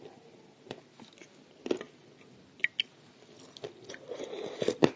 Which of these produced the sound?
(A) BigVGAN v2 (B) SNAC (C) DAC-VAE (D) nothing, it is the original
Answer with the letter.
D